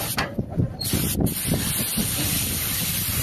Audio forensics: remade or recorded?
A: recorded